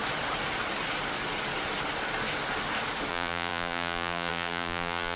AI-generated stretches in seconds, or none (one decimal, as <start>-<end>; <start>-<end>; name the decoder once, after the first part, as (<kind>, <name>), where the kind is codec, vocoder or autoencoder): 3.1-5.2 (vocoder, BigVGAN v2)